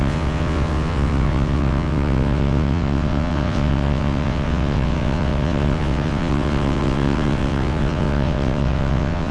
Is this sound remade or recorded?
remade